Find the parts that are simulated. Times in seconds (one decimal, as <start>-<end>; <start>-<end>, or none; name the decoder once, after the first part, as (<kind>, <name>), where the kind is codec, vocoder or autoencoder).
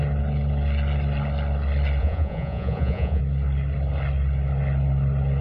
2.0-3.2 (vocoder, Vocos)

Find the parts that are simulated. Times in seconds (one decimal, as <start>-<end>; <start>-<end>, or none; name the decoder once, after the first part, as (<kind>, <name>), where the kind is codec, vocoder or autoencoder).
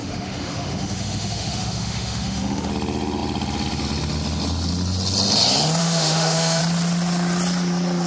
0.0-2.7 (autoencoder, DAC-VAE); 5.8-6.6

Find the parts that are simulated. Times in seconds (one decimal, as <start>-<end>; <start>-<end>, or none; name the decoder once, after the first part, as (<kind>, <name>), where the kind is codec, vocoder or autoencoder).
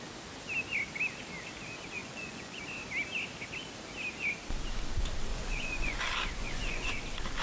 2.0-2.6 (vocoder, Vocos); 5.3-6.0; 6.4-6.9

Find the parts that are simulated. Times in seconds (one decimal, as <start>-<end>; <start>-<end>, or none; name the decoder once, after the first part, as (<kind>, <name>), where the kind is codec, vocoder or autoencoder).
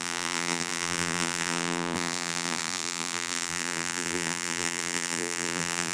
0.0-5.9 (vocoder, BigVGAN v2)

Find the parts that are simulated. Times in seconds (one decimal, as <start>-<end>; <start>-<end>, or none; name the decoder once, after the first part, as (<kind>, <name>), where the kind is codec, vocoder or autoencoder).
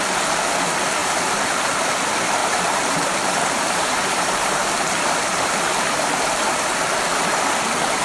1.0-1.7 (vocoder, BigVGAN v2); 2.4-6.7